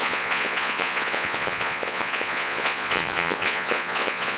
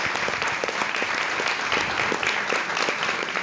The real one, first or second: second